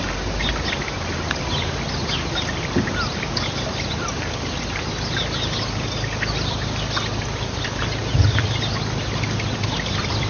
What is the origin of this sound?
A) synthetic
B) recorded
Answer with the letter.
B